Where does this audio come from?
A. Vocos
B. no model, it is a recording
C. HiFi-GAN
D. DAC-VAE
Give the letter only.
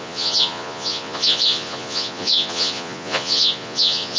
A